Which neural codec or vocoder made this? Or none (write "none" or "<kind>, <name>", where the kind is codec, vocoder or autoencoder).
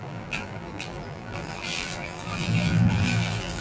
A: vocoder, BigVGAN v2